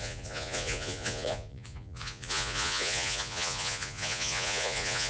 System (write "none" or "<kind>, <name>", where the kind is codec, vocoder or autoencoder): vocoder, Vocos